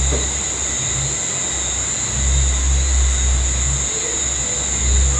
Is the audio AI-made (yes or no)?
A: no